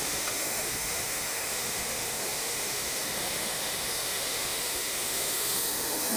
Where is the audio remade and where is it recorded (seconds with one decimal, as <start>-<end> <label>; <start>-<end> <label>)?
0.0-6.2 remade